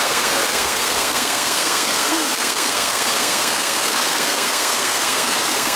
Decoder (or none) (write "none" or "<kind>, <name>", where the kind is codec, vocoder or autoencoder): codec, SNAC